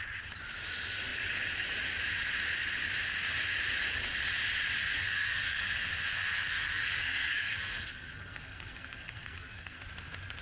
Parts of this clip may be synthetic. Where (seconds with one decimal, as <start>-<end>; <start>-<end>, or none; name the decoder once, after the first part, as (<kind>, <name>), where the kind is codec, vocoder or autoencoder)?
4.8-9.8 (codec, SNAC)